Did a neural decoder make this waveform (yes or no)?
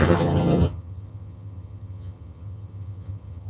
yes